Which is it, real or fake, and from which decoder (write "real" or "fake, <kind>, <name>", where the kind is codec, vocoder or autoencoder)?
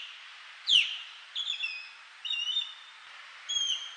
real